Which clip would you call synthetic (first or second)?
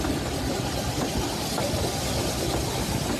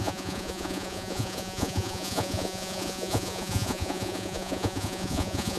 second